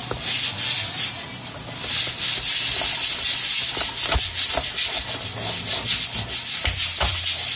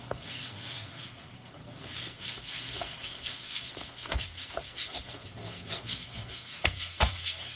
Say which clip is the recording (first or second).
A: first